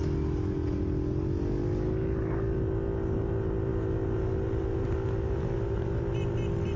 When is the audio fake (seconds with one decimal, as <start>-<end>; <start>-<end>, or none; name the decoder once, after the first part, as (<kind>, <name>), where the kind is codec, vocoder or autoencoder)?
none